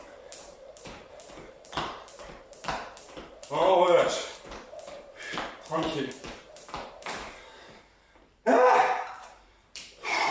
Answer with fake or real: fake